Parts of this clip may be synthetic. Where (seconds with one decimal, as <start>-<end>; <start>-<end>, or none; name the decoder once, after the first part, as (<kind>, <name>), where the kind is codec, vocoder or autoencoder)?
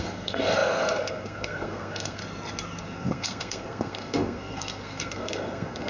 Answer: 0.0-2.2 (codec, SNAC); 2.8-5.9